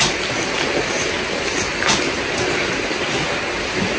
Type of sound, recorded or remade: recorded